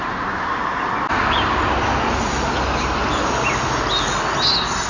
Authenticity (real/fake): real